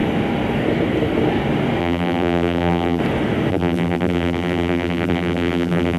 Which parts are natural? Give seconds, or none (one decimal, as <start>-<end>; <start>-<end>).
0.0-1.8; 3.0-3.5